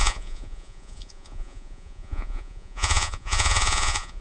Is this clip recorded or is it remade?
remade